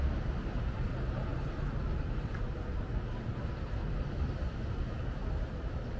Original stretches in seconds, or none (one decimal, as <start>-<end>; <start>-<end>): 0.0-3.8; 4.8-6.0